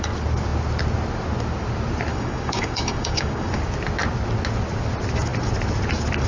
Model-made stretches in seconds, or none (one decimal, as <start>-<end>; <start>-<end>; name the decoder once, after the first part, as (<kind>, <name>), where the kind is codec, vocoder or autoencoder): 2.1-3.6 (codec, DAC)